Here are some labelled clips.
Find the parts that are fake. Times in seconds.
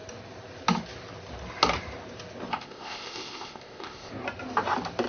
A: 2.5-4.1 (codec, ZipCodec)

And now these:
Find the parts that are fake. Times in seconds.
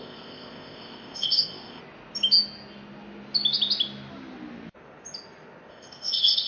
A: 0.0-1.8 (codec, ZipCodec); 5.7-6.5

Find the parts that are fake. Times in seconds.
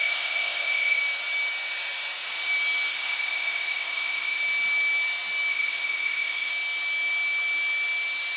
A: 0.0-1.0 (codec, ZipCodec); 2.9-4.4; 5.5-6.5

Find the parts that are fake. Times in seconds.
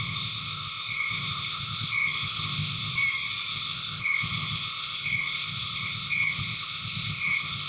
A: 0.0-2.9 (codec, ZipCodec); 3.5-7.7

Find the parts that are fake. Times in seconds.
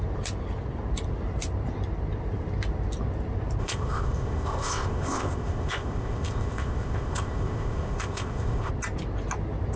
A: 3.6-8.7 (codec, ZipCodec)